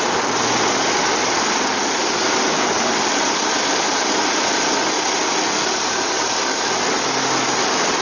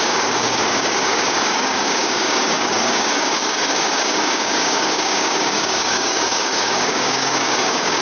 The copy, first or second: second